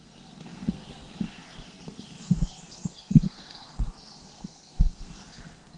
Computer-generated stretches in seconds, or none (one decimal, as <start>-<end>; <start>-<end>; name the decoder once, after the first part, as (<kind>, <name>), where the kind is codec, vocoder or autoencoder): 0.0-5.8 (codec, SNAC)